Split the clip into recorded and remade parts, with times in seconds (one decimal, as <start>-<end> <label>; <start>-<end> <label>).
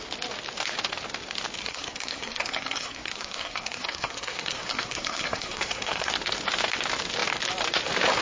0.0-1.6 recorded; 1.6-6.1 remade; 6.1-8.2 recorded